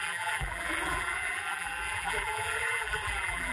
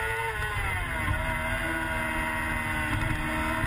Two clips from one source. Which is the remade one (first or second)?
first